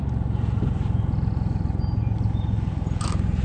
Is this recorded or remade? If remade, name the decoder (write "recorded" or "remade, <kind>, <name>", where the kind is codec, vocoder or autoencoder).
recorded